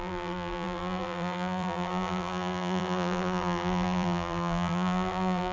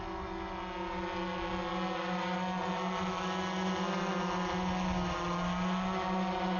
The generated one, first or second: first